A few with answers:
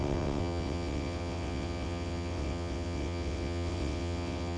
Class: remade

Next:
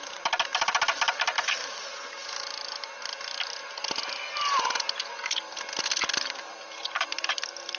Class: recorded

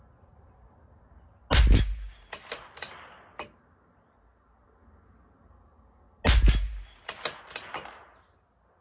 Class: recorded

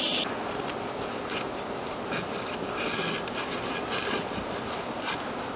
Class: recorded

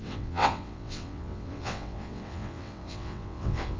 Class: remade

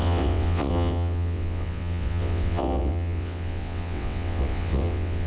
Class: remade